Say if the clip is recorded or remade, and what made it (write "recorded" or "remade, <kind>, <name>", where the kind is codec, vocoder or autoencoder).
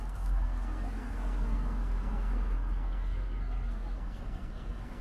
remade, codec, SNAC